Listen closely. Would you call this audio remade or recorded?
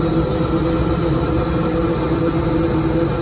recorded